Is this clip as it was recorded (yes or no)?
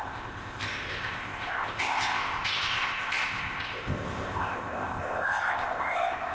no